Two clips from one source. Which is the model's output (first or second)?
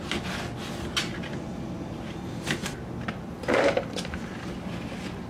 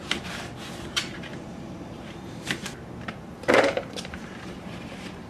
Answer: second